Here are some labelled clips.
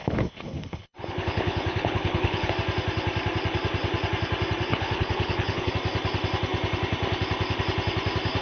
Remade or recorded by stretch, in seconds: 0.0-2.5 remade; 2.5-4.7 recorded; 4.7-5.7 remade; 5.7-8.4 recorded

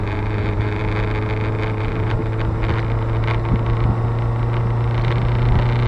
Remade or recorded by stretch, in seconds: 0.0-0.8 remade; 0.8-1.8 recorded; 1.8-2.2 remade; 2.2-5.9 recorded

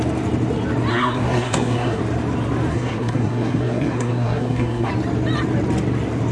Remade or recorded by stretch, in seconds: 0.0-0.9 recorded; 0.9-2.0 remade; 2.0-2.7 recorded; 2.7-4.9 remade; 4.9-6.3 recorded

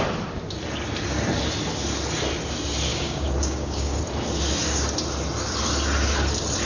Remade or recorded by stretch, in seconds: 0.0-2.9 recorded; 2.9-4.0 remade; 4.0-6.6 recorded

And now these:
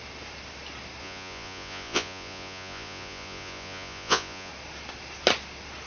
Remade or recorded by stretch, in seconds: 0.0-1.0 recorded; 1.0-4.5 remade; 4.5-5.9 recorded

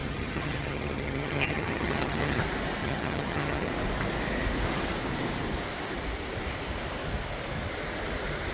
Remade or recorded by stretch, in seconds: 0.0-2.4 remade; 2.4-2.8 recorded; 2.8-3.7 remade; 3.7-8.5 recorded

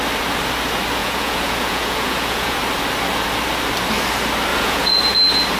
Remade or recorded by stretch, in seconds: 0.0-1.0 recorded; 1.0-2.6 remade; 2.6-4.5 recorded; 4.5-5.0 remade; 5.0-5.6 recorded

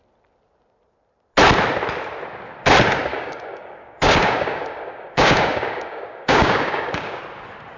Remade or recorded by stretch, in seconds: 0.0-3.1 recorded; 3.1-7.2 remade; 7.2-7.8 recorded